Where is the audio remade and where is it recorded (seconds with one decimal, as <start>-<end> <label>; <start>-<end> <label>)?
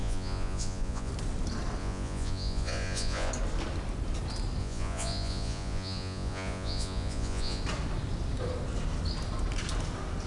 0.0-1.1 remade; 1.1-1.8 recorded; 1.8-3.3 remade; 3.3-4.6 recorded; 4.6-7.6 remade; 7.6-10.3 recorded